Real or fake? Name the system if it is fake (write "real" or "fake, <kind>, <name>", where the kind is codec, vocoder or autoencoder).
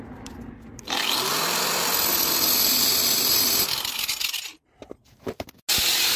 real